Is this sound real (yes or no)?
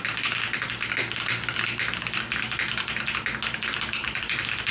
yes